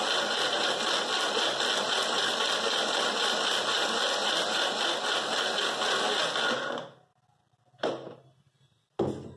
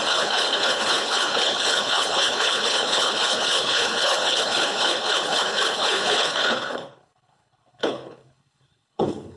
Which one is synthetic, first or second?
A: second